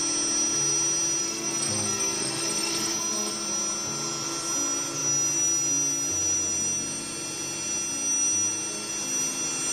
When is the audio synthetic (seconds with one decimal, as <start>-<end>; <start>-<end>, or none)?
1.2-3.3